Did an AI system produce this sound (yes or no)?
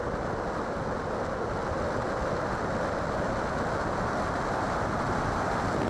no